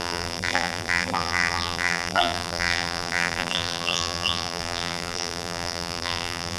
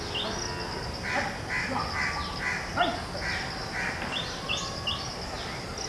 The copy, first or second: first